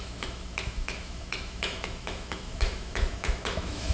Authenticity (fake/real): fake